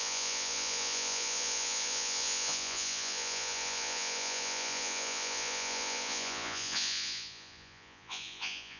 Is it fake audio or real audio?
fake